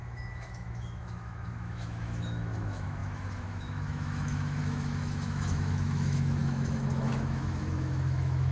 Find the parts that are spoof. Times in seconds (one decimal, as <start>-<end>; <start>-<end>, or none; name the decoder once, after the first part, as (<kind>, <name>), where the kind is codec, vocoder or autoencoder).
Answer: 0.0-8.5 (autoencoder, DAC-VAE)